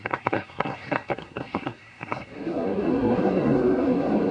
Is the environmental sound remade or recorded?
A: remade